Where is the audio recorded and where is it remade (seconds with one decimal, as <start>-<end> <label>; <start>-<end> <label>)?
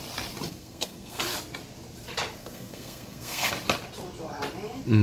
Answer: 0.0-0.5 recorded; 0.5-1.2 remade; 1.2-2.4 recorded; 2.4-3.5 remade; 3.5-5.0 recorded